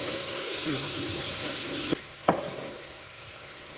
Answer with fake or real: fake